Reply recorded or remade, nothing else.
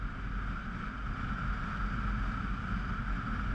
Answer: recorded